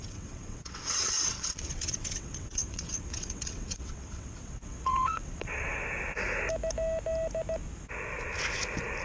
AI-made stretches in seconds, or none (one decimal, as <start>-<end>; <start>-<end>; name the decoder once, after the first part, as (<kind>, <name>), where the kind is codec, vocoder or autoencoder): 0.0-5.8 (vocoder, WaveNeXt)